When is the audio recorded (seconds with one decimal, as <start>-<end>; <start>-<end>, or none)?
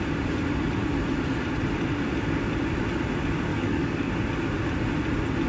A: 0.0-3.5; 4.1-5.5